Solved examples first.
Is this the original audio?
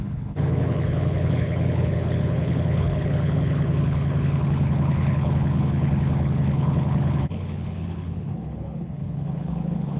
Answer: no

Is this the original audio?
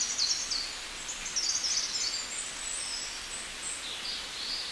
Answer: yes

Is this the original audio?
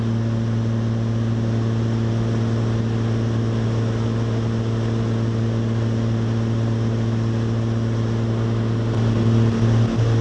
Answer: yes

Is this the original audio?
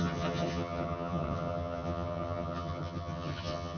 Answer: no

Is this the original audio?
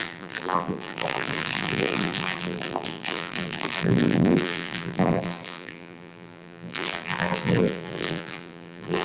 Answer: no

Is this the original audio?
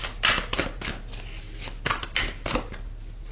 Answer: yes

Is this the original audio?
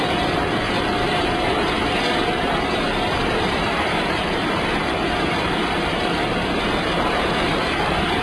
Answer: no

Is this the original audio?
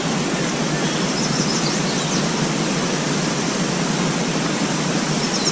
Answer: yes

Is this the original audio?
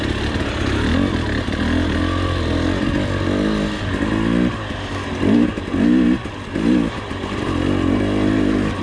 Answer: yes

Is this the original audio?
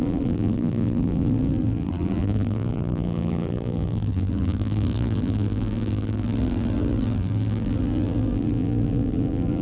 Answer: no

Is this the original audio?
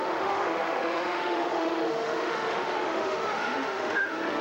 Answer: no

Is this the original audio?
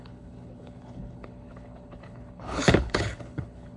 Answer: no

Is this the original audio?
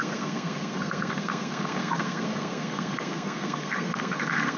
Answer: no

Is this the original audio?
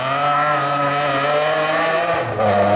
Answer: yes